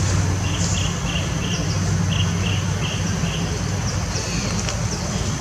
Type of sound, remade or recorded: recorded